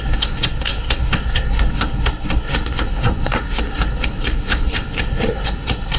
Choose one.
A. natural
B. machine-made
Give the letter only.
B